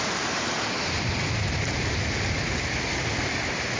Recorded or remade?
recorded